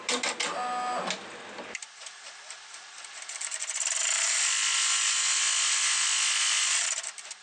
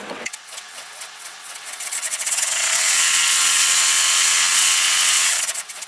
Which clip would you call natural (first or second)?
first